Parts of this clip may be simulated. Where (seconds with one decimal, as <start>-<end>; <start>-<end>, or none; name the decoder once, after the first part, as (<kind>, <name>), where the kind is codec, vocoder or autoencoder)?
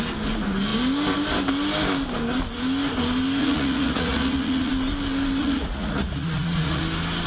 3.4-4.7 (vocoder, Vocos); 5.4-6.8